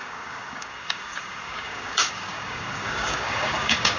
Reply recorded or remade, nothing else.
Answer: remade